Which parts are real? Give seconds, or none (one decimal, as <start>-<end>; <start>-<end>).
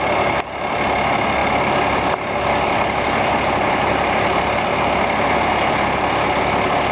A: 0.0-1.4; 4.4-6.9